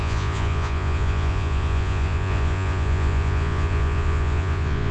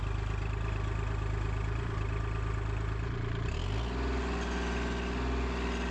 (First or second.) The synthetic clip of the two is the first